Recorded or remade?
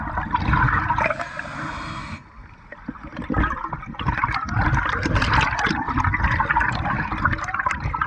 recorded